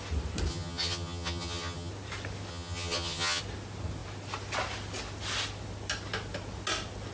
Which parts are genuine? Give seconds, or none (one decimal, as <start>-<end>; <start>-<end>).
0.0-0.5; 1.9-2.5; 3.4-7.1